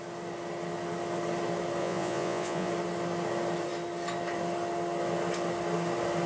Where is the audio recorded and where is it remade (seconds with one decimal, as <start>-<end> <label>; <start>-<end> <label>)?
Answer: 0.0-1.8 recorded; 1.8-2.7 remade; 2.7-6.3 recorded